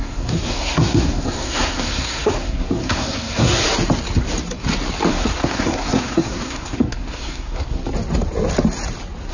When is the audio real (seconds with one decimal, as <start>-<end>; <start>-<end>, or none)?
3.6-5.1; 7.8-9.3

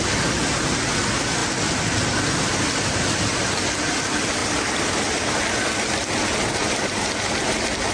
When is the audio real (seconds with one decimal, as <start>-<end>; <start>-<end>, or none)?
0.0-4.4; 5.4-7.9

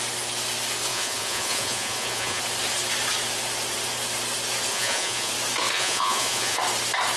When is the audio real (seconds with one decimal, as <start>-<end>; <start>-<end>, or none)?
0.0-0.9; 2.4-4.7; 5.3-5.7; 6.6-7.2

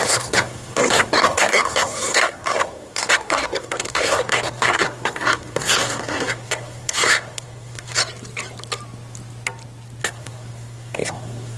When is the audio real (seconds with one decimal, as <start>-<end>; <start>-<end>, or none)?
8.0-10.0

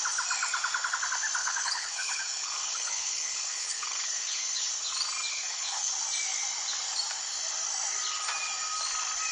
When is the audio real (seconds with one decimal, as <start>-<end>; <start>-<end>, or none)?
0.0-1.4; 4.7-5.3; 5.9-9.3

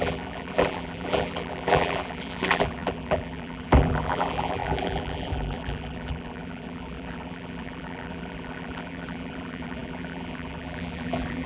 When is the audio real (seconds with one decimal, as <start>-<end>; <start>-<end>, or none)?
none

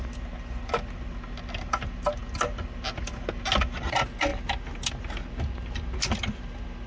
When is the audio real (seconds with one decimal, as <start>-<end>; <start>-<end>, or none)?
0.0-6.9

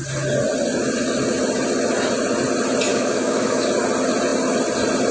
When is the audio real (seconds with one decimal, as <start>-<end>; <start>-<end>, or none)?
0.0-2.9; 3.7-5.1